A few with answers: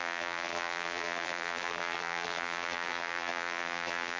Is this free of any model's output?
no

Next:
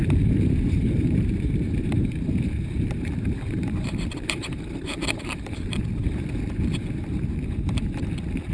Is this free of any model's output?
no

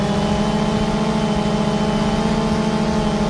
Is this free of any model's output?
yes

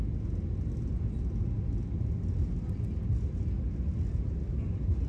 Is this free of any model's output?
yes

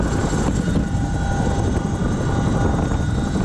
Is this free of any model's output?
yes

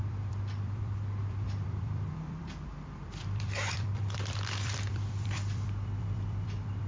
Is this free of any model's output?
no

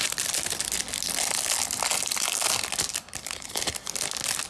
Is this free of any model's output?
yes